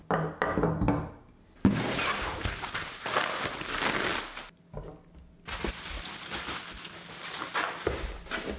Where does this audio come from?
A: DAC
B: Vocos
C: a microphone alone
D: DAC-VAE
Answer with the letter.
C